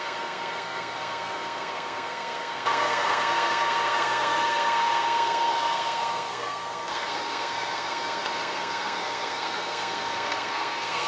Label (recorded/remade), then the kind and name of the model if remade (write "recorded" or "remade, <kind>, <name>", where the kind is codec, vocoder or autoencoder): remade, codec, SNAC